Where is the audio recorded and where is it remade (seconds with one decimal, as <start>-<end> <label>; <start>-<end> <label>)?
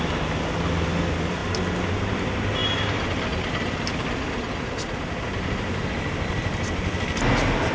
0.0-7.7 recorded